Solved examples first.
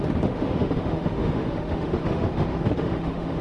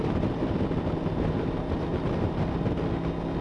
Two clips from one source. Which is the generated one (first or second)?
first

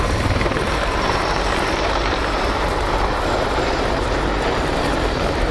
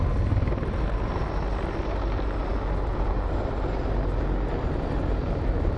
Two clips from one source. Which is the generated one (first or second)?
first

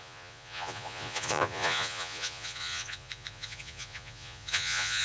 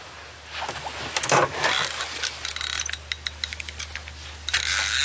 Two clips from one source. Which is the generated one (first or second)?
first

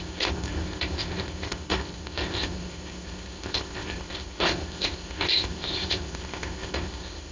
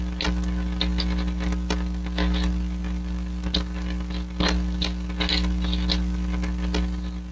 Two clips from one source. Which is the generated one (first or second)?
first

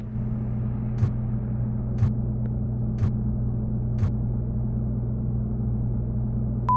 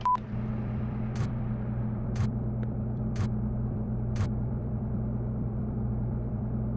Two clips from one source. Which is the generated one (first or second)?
second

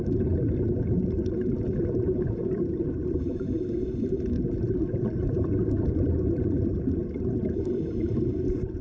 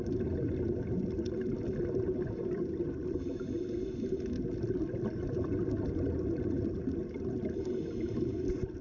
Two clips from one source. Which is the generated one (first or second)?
first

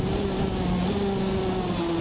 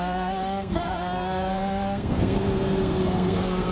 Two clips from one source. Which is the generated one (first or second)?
second